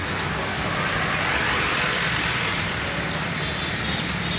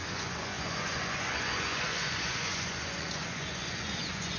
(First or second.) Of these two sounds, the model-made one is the second